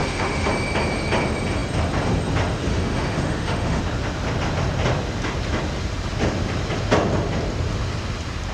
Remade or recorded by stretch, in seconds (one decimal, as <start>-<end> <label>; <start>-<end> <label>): 0.0-0.5 remade; 0.5-2.7 recorded; 2.7-3.8 remade; 3.8-8.5 recorded